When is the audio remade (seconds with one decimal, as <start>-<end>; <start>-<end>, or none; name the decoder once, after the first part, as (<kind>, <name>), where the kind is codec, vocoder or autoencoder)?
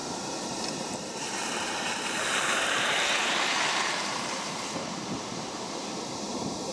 0.0-6.7 (vocoder, BigVGAN v2)